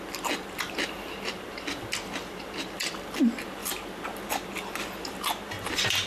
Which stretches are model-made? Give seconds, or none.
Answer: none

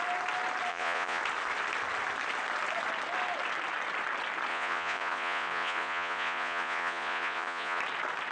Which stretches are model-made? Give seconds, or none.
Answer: 0.7-1.2 (vocoder, Vocos); 4.5-7.8

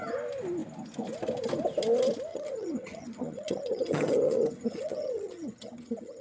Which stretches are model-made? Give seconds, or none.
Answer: 2.3-6.2 (vocoder, HiFi-GAN)

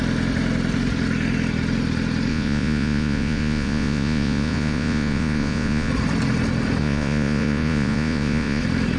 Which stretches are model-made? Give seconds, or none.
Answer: 2.3-5.9 (vocoder, Vocos); 6.8-8.6

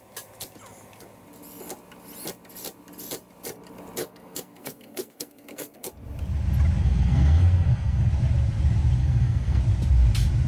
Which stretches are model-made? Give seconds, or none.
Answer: 4.0-5.9 (codec, SNAC); 6.8-8.1; 9.0-9.6

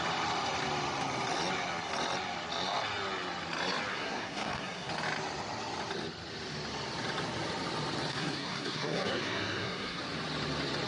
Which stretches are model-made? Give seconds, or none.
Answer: 3.9-4.9 (codec, SNAC); 8.1-10.0

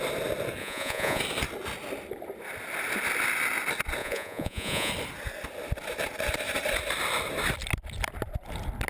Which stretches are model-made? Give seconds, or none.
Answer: 0.6-1.2 (vocoder, Vocos); 4.0-4.9

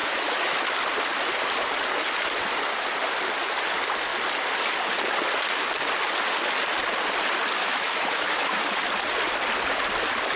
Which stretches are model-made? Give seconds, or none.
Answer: 0.0-0.7 (autoencoder, DAC-VAE); 7.6-8.7